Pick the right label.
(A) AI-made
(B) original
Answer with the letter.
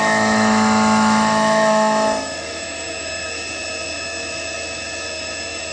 A